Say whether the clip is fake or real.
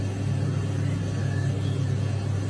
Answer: real